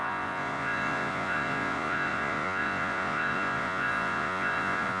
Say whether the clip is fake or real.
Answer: fake